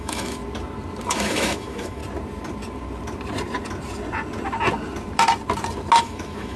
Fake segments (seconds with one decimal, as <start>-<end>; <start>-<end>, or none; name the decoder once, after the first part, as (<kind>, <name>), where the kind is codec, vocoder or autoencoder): 0.0-0.4 (autoencoder, DAC-VAE); 1.1-2.0; 6.0-6.6